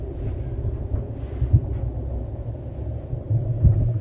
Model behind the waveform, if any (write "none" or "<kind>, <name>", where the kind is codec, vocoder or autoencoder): none